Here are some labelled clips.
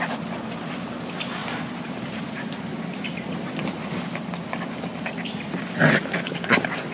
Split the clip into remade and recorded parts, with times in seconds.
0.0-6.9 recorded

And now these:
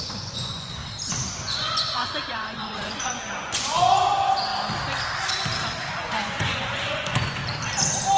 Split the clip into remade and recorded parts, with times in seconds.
0.0-0.8 remade; 0.8-1.4 recorded; 1.4-4.5 remade; 4.5-5.8 recorded; 5.8-7.4 remade; 7.4-8.2 recorded